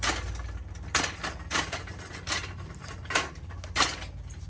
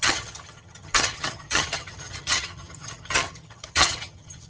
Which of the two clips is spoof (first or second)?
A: second